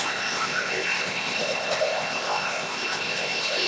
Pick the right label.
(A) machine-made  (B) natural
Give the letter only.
A